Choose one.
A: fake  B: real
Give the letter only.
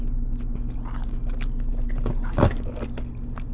B